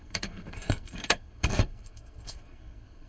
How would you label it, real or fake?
fake